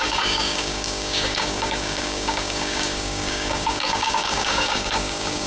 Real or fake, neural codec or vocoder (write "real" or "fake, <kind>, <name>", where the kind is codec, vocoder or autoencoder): fake, codec, DAC